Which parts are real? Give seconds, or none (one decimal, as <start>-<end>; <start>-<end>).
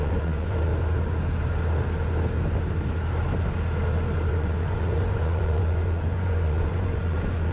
0.7-4.3